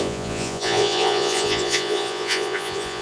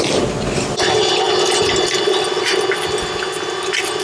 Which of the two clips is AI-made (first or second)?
first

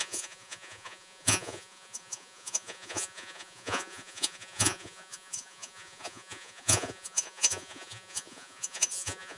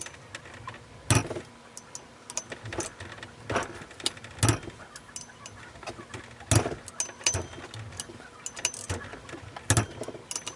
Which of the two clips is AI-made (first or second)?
first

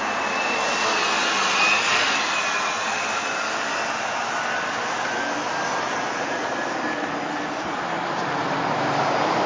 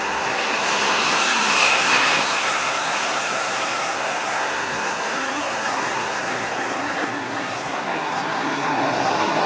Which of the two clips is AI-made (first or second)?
second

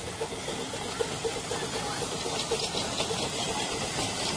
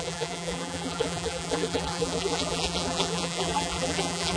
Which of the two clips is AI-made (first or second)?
second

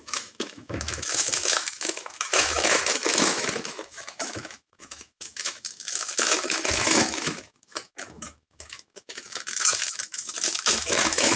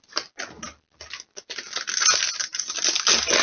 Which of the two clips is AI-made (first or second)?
first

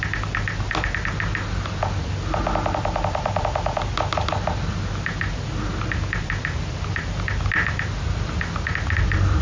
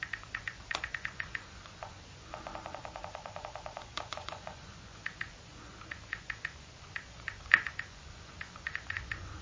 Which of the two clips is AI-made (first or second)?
second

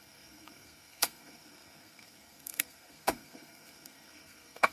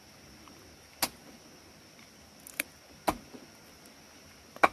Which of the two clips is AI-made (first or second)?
first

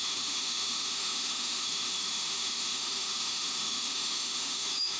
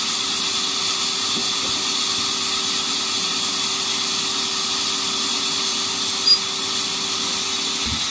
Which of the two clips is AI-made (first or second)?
first